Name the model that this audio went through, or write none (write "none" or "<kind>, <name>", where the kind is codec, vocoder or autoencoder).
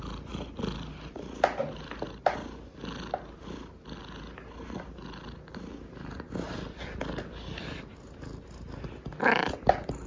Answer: none